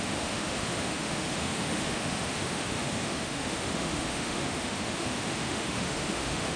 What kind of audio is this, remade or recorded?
remade